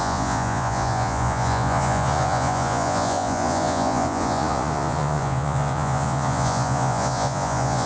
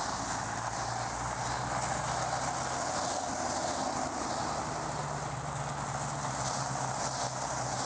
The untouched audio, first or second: second